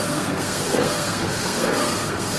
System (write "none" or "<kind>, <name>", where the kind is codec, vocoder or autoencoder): codec, SNAC